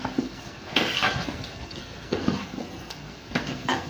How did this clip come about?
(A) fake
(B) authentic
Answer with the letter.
A